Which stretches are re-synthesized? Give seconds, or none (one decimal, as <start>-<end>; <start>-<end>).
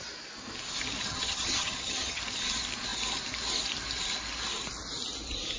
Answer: 1.1-2.2